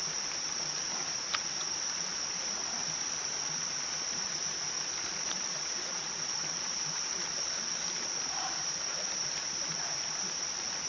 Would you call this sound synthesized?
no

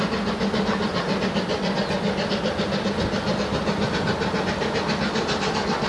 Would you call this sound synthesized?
no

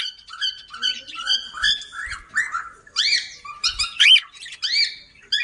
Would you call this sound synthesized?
no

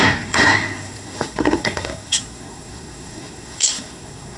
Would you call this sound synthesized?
yes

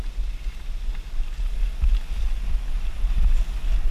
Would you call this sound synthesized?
no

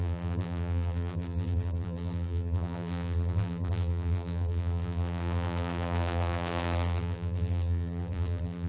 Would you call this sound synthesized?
yes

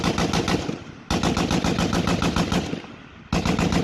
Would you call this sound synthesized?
no